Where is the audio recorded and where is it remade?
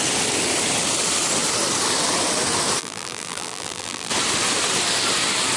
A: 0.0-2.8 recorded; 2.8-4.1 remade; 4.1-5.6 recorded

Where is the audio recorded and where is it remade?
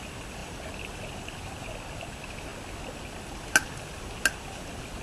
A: 0.0-5.0 recorded